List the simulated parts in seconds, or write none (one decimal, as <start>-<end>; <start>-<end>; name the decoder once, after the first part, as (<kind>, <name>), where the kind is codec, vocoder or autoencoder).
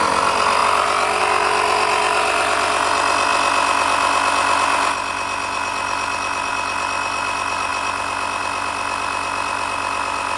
none